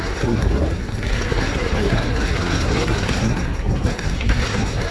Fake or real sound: fake